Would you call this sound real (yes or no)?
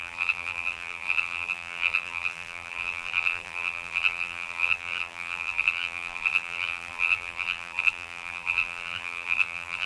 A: no